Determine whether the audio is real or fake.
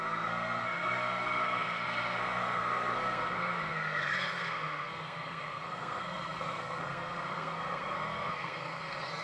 fake